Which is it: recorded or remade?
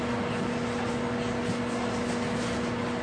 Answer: recorded